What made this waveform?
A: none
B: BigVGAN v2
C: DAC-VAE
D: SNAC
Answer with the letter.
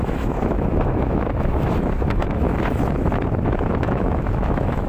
C